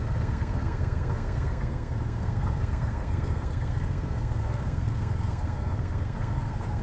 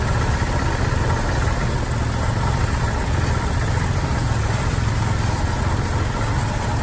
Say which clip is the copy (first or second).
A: first